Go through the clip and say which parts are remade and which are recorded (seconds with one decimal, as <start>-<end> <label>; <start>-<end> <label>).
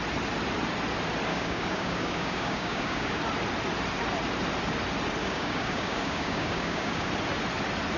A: 0.0-1.3 recorded; 1.3-3.2 remade; 3.2-5.2 recorded; 5.2-7.1 remade; 7.1-8.0 recorded